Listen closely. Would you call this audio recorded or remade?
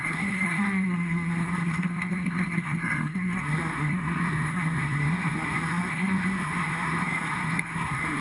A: remade